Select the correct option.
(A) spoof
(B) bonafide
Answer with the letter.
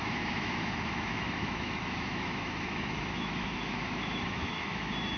A